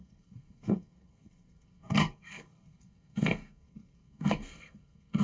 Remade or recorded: remade